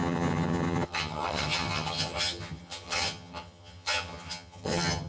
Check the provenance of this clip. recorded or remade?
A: remade